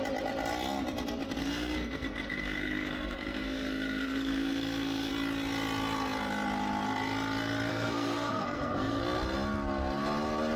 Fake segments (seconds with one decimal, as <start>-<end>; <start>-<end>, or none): 1.4-5.1; 7.7-9.0